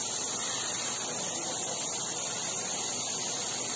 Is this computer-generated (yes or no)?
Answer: yes